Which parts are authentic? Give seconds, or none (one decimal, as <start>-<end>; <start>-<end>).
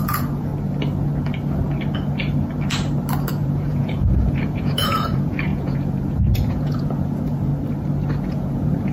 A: 0.5-3.3; 7.5-8.2